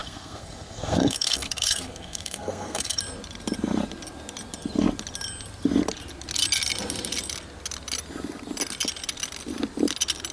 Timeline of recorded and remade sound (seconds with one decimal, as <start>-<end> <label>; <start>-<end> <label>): 0.0-3.0 remade; 3.0-10.3 recorded